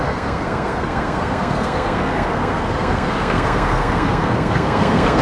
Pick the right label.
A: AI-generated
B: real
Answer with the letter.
A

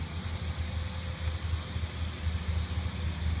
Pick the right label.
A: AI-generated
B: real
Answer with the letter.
B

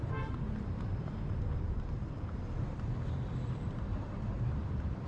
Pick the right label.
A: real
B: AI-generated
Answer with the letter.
B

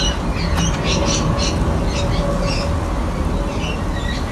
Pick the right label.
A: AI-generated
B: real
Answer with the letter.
B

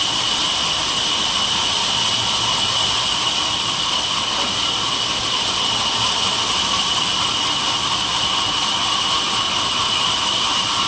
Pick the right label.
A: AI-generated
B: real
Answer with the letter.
B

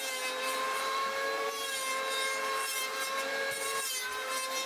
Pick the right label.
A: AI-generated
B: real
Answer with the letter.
A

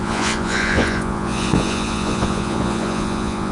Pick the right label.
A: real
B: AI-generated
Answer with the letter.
B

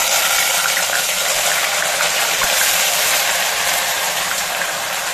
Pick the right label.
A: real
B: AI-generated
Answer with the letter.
B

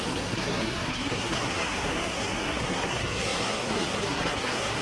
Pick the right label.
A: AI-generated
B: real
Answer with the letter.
A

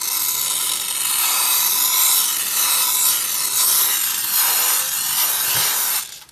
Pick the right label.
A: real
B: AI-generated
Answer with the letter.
A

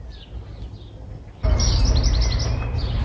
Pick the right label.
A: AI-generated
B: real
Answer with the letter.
B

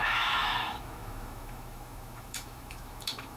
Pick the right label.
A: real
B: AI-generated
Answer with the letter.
B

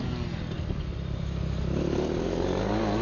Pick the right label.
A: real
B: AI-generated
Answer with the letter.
A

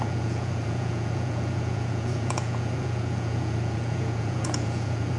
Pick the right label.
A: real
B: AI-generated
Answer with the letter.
B